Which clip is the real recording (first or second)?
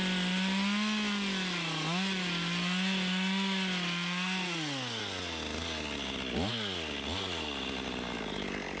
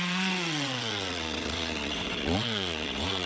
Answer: first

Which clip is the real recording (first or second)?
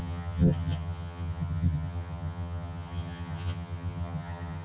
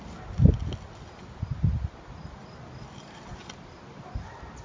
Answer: second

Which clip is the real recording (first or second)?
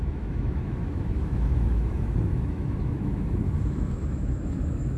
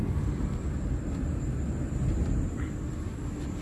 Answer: second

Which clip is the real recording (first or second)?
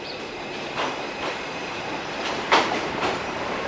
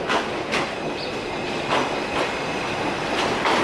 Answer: second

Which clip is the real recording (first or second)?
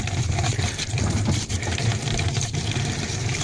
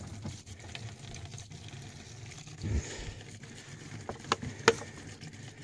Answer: second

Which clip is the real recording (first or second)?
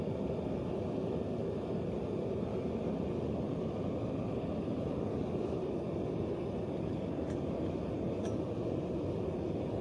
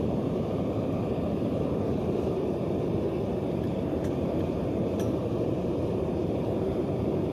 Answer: first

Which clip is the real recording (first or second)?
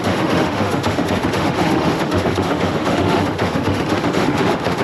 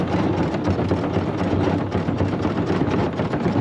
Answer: second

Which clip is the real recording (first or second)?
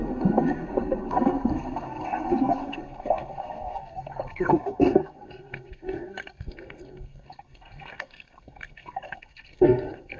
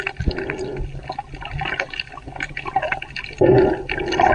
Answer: second